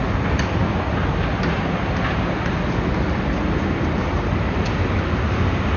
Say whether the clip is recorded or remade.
recorded